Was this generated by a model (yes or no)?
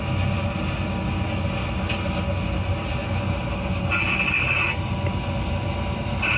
no